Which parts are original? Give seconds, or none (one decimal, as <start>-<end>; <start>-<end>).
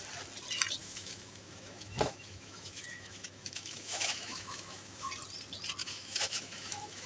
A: 0.0-0.8; 5.1-5.8